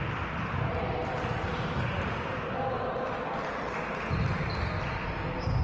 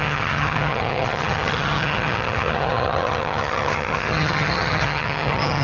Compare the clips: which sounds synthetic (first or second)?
second